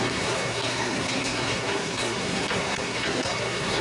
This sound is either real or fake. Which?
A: fake